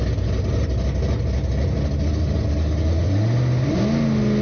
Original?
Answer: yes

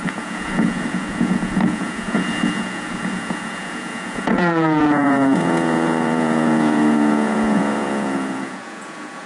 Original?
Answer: no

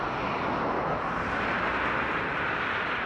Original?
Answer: yes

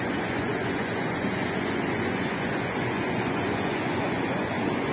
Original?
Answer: no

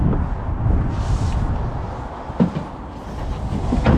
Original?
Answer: yes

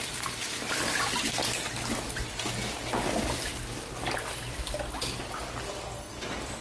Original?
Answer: yes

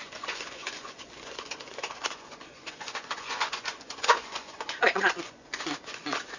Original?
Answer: no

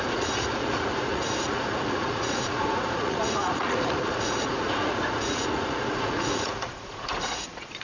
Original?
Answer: no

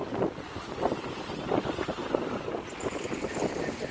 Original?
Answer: yes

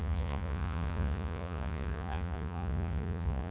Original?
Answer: no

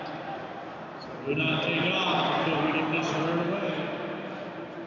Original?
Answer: yes